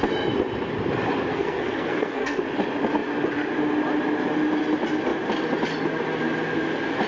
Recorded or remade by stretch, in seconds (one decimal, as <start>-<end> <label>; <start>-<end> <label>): 0.0-1.3 recorded; 1.3-2.4 remade; 2.4-7.1 recorded